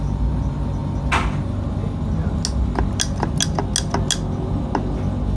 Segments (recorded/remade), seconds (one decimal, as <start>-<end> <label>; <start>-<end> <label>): 0.0-5.4 recorded